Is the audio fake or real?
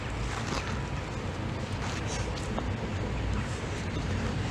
real